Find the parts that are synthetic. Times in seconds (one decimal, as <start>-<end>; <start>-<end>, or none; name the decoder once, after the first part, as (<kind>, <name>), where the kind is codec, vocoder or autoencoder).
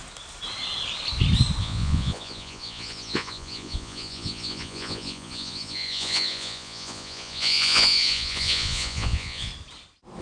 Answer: 1.6-9.5 (vocoder, Vocos)